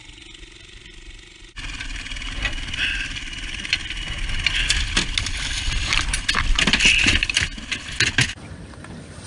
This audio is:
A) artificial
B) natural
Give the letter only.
B